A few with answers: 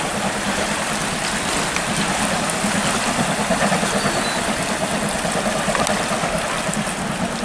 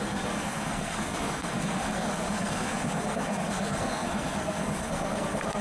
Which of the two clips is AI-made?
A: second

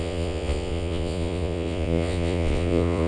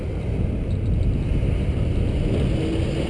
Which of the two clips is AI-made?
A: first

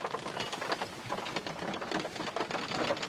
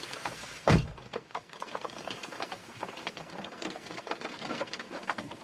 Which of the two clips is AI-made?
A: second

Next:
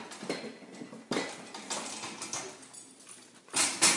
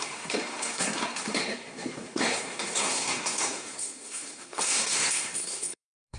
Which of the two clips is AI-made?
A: second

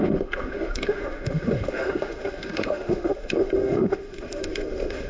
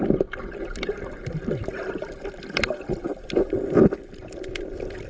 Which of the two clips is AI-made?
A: first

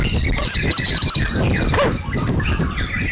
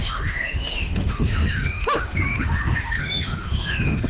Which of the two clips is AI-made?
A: second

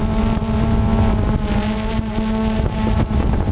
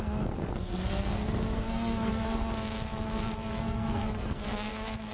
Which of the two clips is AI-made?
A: second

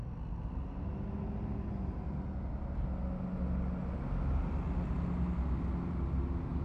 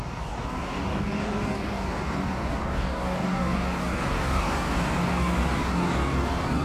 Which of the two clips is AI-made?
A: second